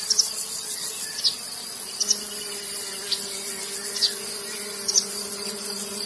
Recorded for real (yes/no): yes